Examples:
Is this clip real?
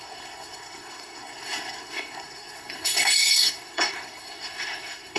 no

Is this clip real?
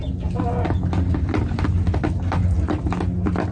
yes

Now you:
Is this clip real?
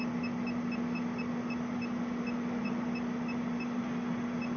yes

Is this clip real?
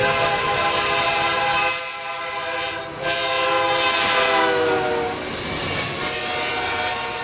yes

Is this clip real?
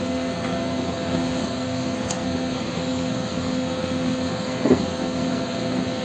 no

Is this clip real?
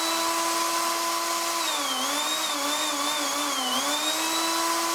yes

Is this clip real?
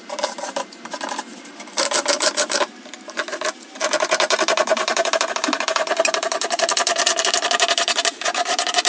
no